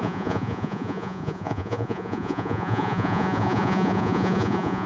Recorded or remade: remade